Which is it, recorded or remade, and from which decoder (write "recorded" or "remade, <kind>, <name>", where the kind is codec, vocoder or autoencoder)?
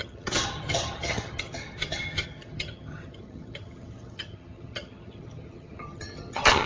remade, vocoder, HiFi-GAN